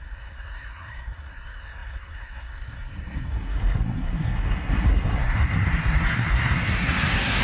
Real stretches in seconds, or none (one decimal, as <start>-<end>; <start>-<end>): none